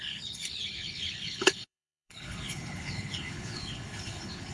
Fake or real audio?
fake